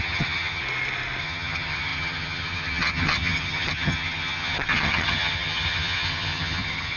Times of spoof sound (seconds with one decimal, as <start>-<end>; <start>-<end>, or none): 0.0-0.6; 1.2-7.0